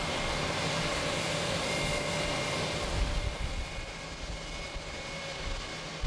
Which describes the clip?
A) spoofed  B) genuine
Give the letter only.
B